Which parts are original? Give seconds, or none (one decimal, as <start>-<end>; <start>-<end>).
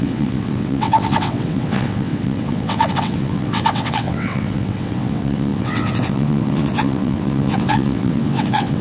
none